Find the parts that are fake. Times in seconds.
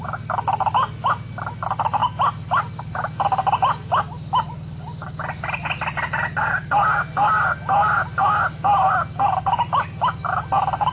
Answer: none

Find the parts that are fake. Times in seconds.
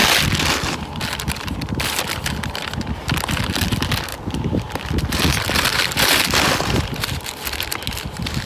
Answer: 4.1-7.3 (vocoder, BigVGAN v2)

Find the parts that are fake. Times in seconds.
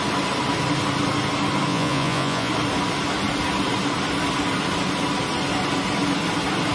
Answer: 1.7-2.5 (vocoder, Vocos)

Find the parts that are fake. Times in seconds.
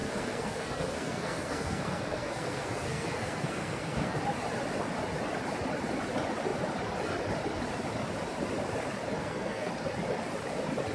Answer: 0.0-4.2 (codec, SNAC); 9.2-9.7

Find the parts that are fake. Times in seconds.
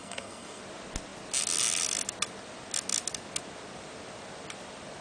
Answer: 0.0-0.6 (codec, SNAC)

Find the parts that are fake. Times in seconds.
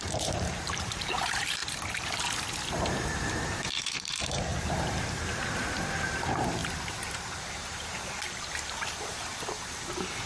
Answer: 0.0-1.6 (vocoder, BigVGAN v2); 2.7-10.3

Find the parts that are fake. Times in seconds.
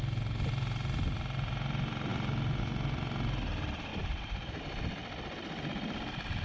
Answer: 2.1-2.6 (vocoder, BigVGAN v2); 3.9-4.6